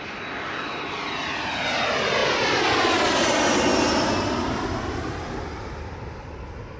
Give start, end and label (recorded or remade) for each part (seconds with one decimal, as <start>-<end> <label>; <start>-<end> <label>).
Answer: 0.0-6.8 recorded